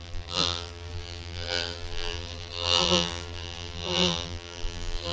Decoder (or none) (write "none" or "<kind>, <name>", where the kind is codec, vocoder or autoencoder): vocoder, BigVGAN v2